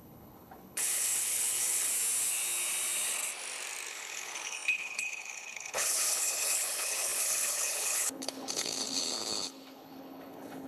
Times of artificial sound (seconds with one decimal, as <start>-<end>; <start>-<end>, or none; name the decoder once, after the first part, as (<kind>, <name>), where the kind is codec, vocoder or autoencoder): 0.0-1.9 (codec, HILCodec); 3.9-10.7

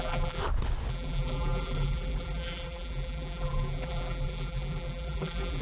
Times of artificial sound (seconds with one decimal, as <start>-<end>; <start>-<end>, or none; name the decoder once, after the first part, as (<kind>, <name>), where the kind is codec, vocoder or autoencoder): 0.0-0.4 (vocoder, BigVGAN v2); 0.9-5.6

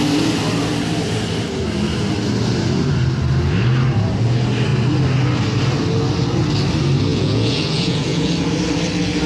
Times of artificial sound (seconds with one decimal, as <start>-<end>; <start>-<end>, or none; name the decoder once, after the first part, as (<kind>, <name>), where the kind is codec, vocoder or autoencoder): 7.1-8.3 (vocoder, Vocos)

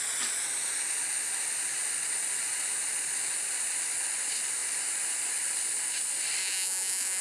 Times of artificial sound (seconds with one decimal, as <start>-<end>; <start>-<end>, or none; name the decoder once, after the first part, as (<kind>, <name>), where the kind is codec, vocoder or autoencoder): 6.4-7.2 (vocoder, Vocos)

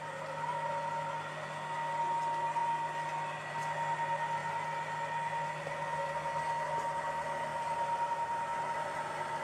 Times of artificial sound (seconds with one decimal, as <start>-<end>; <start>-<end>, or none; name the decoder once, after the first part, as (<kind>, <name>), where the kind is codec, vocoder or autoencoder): 7.5-8.1 (vocoder, BigVGAN v2)

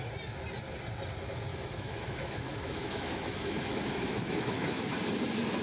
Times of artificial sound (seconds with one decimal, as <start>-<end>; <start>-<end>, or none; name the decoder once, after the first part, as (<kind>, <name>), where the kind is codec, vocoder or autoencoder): 1.5-4.9 (autoencoder, DAC-VAE)

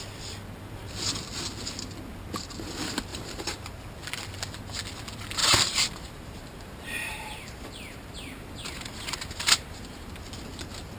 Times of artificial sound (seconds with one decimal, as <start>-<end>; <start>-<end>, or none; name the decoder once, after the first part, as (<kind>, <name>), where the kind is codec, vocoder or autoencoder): 3.1-3.7 (vocoder, BigVGAN v2); 5.4-10.1